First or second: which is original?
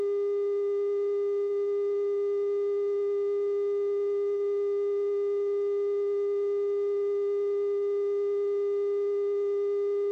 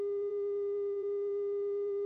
first